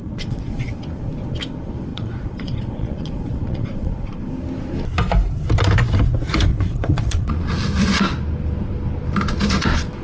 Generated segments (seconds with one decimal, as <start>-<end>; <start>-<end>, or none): 0.0-0.8; 1.9-4.2; 6.5-7.5